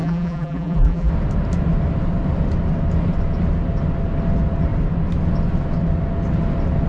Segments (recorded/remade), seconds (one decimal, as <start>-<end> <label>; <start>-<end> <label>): 0.0-1.1 remade; 1.1-6.9 recorded